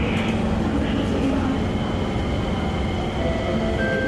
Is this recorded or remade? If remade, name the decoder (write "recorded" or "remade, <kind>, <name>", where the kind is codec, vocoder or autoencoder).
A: recorded